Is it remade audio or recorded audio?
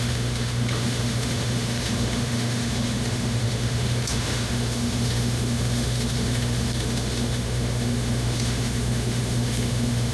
remade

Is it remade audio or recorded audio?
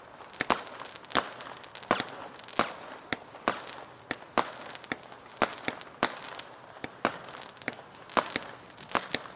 recorded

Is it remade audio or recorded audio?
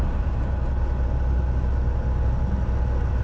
recorded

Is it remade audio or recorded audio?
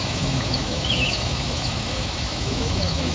remade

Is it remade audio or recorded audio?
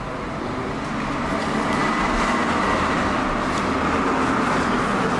recorded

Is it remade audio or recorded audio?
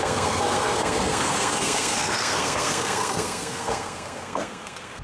remade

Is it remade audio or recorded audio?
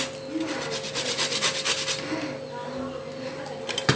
recorded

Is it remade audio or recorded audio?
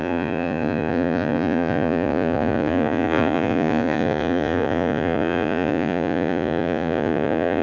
remade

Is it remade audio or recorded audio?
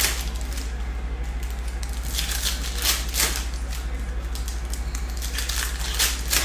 recorded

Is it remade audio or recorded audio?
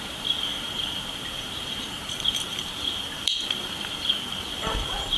remade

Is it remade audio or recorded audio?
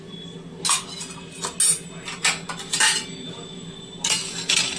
recorded